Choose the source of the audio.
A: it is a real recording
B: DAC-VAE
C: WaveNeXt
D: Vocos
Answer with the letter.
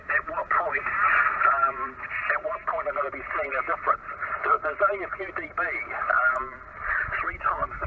A